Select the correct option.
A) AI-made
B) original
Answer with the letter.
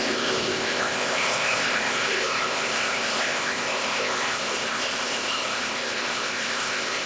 A